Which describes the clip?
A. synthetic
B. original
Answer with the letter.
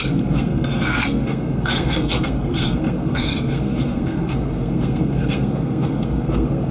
A